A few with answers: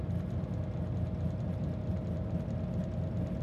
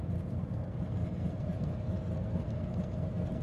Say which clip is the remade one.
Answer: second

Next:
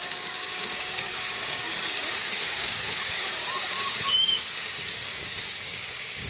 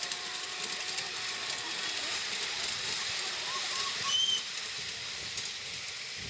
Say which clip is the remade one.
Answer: first